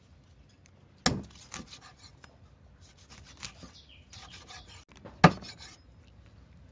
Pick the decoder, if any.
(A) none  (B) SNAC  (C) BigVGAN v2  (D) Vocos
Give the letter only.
A